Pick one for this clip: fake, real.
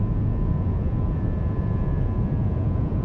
fake